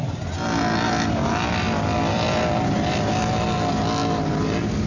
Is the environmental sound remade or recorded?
recorded